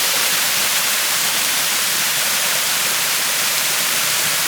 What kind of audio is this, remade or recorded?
remade